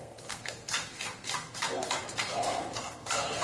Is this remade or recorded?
remade